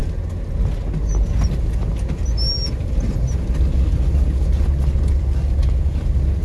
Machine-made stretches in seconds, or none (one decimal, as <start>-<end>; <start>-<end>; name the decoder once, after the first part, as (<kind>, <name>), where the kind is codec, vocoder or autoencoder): none

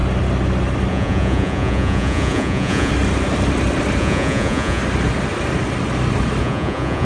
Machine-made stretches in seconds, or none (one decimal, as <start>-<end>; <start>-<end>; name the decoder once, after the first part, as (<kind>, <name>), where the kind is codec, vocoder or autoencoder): 0.9-2.9 (vocoder, Vocos); 4.0-4.8; 6.4-7.0

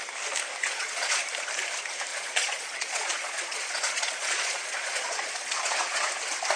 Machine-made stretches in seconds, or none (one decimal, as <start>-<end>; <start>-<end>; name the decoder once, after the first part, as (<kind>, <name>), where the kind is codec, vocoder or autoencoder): 0.6-1.2 (vocoder, Vocos); 2.1-6.1

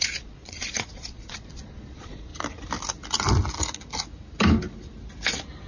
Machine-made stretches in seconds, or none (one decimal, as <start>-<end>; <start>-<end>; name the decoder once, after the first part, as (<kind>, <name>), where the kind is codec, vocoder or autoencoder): 0.0-2.3 (vocoder, Vocos)